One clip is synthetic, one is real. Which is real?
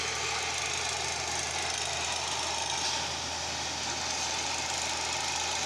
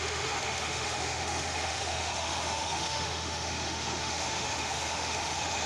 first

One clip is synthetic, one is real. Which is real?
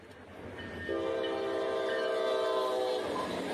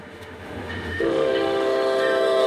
first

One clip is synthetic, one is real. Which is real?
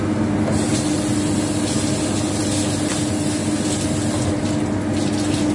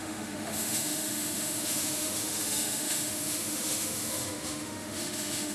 first